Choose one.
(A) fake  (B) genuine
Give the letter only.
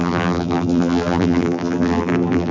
A